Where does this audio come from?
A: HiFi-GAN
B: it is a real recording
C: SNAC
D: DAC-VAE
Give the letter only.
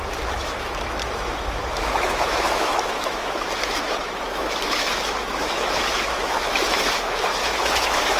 D